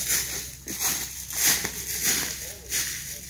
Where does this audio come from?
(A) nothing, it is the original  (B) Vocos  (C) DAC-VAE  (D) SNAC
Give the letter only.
A